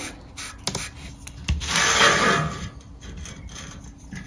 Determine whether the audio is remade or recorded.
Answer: recorded